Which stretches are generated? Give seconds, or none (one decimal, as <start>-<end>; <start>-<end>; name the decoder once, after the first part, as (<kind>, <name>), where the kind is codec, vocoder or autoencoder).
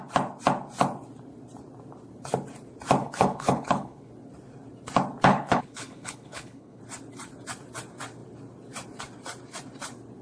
3.0-4.1 (codec, HILCodec); 5.3-6.8